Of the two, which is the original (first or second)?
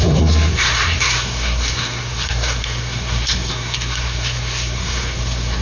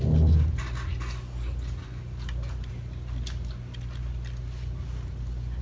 second